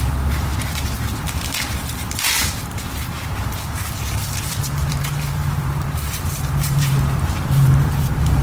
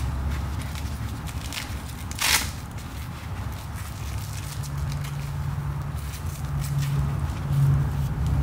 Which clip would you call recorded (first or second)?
second